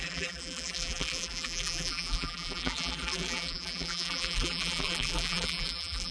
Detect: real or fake fake